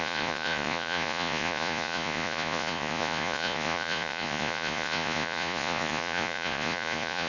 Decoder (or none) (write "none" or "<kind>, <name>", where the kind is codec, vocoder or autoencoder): vocoder, Vocos